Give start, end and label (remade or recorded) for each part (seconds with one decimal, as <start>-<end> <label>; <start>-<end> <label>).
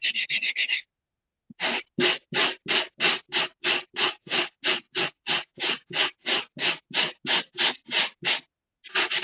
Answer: 0.0-9.2 recorded